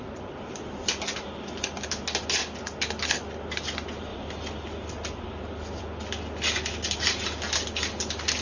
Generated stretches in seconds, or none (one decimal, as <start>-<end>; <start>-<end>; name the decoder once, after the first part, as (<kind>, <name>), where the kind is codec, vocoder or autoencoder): none